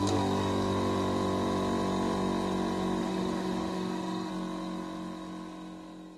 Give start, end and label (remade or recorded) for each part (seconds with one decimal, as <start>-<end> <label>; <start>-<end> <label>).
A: 0.0-3.0 recorded; 3.0-4.3 remade; 4.3-6.2 recorded